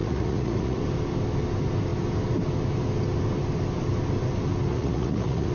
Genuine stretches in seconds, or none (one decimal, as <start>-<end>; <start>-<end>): 0.8-4.7